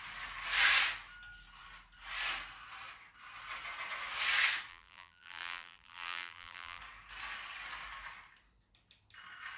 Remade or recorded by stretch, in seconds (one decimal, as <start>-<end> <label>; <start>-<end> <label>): 0.0-4.7 recorded; 4.7-6.8 remade; 6.8-9.6 recorded